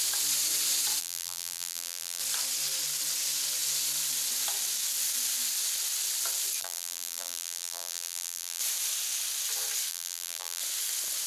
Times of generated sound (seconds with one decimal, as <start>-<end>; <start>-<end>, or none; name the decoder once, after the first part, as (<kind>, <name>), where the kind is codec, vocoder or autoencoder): 1.0-2.2 (vocoder, BigVGAN v2); 6.6-8.6; 9.9-10.6